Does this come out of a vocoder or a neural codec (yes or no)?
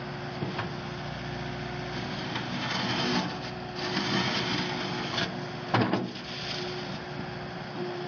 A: no